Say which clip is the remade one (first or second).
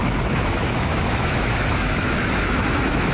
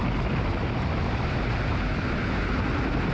first